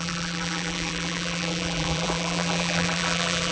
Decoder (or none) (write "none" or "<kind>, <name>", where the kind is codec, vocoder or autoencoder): vocoder, BigVGAN v2